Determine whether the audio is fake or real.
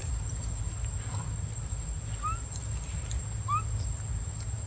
real